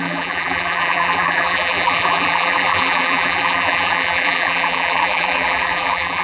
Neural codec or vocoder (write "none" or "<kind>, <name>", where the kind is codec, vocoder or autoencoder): vocoder, BigVGAN v2